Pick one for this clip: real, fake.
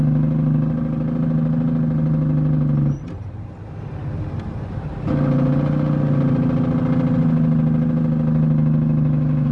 real